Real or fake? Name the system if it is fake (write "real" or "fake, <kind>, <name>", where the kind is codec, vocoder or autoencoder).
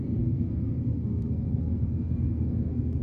fake, codec, SNAC